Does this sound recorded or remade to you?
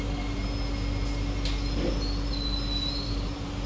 recorded